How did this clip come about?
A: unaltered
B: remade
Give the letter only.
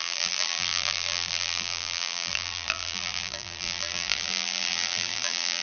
B